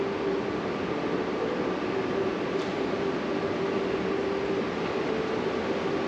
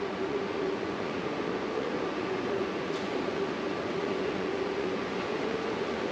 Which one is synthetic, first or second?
second